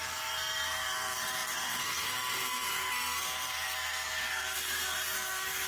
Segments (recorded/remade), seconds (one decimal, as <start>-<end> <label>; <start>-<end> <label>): 0.0-5.7 remade